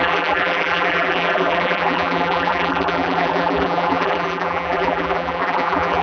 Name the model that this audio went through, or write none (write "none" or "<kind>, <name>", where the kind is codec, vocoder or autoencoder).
vocoder, BigVGAN v2